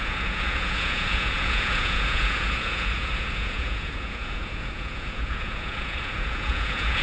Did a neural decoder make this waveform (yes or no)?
yes